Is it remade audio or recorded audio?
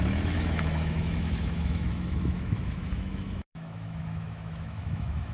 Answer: remade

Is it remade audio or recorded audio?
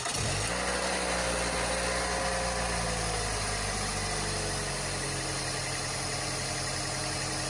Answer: recorded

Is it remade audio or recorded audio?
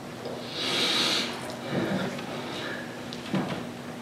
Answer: recorded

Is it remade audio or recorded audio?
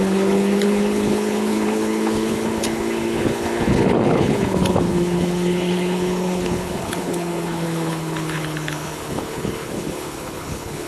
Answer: remade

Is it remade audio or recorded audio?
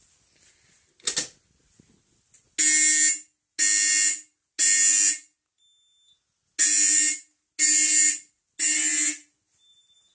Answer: recorded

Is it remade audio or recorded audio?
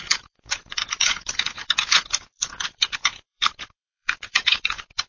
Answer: remade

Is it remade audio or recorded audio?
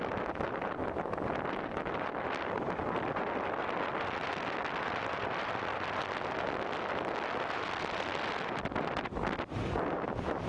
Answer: recorded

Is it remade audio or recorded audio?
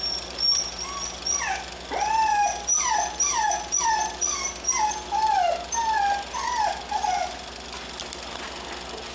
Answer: recorded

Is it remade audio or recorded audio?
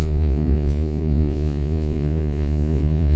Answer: remade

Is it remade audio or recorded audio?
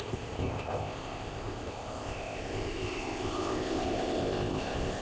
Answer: remade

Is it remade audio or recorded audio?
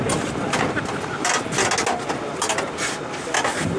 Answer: recorded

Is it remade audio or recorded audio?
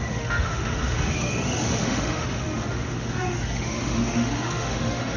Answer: remade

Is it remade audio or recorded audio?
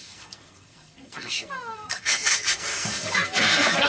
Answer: remade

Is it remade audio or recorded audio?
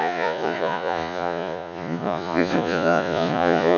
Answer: remade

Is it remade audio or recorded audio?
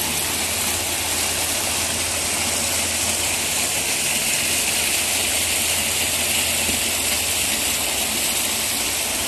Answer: recorded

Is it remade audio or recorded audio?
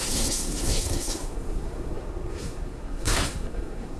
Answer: remade